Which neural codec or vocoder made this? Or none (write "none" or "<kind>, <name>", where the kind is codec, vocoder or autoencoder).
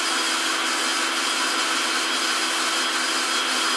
none